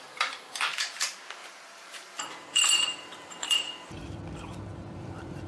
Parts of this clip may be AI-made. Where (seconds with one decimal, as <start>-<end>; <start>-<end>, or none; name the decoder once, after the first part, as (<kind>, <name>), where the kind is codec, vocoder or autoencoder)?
0.0-5.5 (vocoder, BigVGAN v2)